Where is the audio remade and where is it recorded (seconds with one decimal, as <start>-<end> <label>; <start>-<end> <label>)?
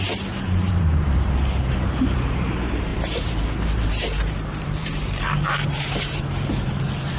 0.0-7.2 remade